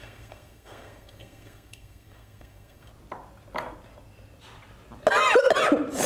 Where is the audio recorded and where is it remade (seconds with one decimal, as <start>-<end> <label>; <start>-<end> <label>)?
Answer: 0.0-2.9 remade; 2.9-6.1 recorded